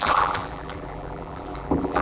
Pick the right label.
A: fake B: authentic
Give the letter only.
A